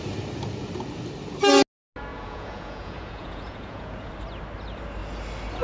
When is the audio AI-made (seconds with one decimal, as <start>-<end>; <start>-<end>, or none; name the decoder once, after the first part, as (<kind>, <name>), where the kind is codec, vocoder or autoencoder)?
2.1-4.1 (vocoder, Vocos)